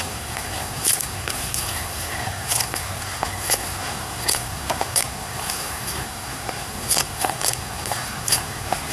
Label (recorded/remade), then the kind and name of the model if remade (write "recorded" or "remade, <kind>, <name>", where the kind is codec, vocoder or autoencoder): remade, codec, SNAC